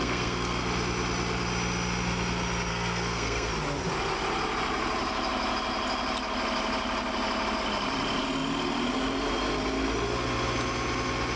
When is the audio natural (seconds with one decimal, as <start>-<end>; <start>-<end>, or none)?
0.6-2.7; 3.5-11.4

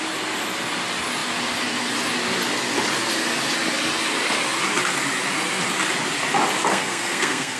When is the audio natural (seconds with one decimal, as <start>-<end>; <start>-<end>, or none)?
0.0-6.7

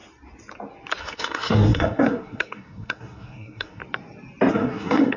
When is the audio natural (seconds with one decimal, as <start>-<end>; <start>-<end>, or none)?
0.0-1.0; 3.8-4.5

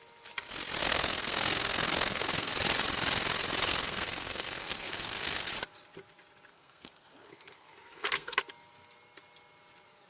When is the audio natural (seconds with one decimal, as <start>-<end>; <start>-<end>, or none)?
0.0-0.8; 2.5-3.7; 5.5-6.5; 8.4-10.1

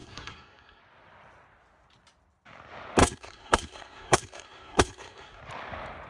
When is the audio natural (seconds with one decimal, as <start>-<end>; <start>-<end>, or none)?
0.8-3.0; 5.4-6.1

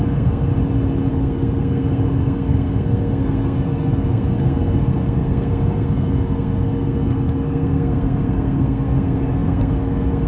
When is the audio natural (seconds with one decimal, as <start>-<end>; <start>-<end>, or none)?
0.5-1.1